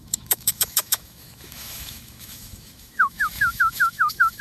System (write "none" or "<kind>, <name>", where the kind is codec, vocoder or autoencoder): autoencoder, DAC-VAE